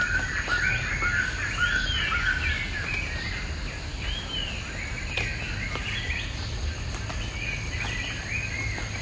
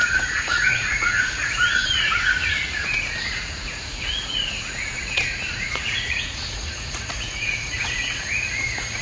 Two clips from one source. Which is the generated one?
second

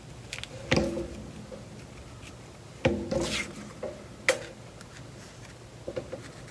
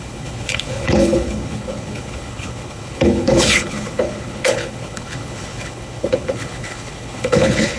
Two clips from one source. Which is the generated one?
second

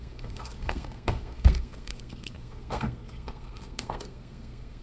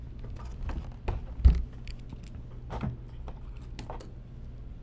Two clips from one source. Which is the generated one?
first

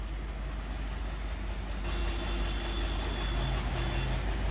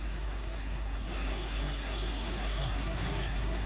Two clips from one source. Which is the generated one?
second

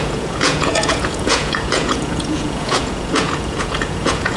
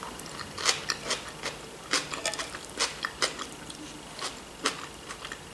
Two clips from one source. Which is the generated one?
first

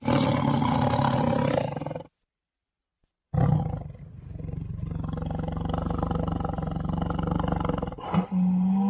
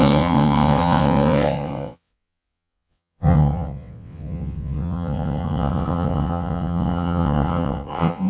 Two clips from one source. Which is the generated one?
second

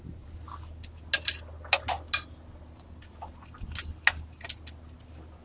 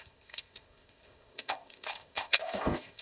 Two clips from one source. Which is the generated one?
second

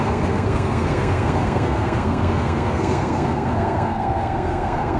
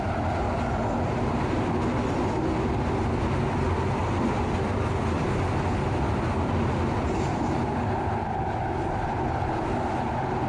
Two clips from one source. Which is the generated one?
first